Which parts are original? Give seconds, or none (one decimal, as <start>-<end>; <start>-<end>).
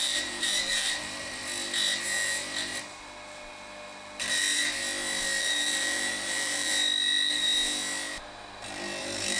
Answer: 1.4-2.0; 2.7-5.4; 6.7-9.0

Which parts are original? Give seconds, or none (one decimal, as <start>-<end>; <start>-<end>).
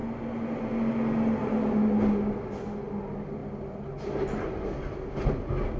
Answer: 0.0-5.8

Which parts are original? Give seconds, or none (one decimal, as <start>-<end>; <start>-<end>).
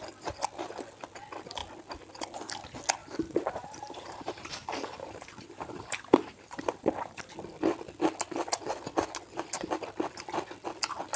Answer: 0.0-3.0; 7.3-11.2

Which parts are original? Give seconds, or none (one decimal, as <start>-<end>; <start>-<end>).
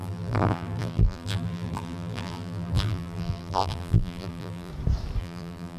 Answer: 4.7-5.2